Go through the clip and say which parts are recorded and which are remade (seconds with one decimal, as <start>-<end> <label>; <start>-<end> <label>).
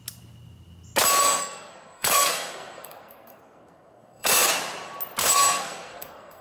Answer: 0.0-1.2 recorded; 1.2-4.5 remade; 4.5-5.2 recorded; 5.2-6.4 remade